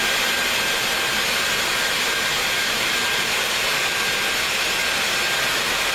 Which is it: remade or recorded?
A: recorded